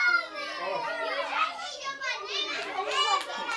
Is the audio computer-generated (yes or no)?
no